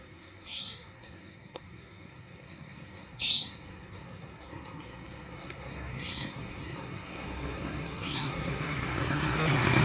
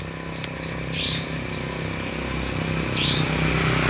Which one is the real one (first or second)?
second